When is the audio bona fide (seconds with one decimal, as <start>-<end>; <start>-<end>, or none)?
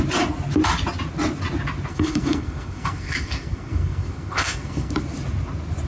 0.0-1.9; 4.9-5.9